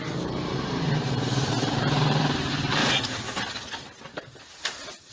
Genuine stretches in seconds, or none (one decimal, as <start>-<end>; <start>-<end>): 2.8-5.1